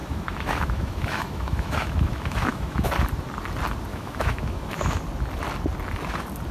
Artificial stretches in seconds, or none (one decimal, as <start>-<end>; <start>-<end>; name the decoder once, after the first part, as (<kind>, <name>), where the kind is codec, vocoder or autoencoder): 0.0-2.9 (autoencoder, DAC-VAE); 3.9-5.0